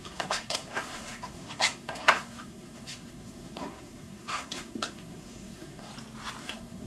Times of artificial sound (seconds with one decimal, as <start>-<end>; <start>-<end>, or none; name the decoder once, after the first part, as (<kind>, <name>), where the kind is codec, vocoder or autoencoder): 0.0-5.9 (codec, SNAC); 6.4-6.9